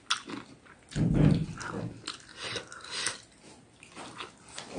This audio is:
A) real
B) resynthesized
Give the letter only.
A